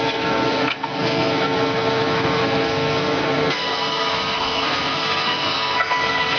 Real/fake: fake